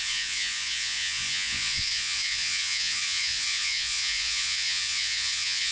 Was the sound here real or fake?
fake